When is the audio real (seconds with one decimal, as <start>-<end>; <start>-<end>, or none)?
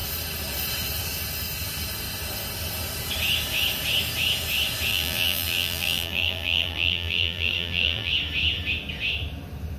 0.0-4.9; 8.1-9.8